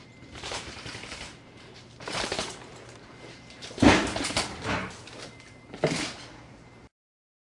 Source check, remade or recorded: remade